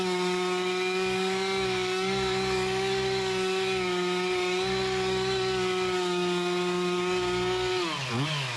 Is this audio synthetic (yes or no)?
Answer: yes